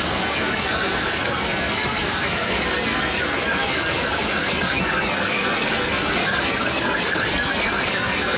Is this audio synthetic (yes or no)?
yes